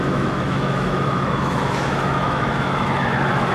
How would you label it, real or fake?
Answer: fake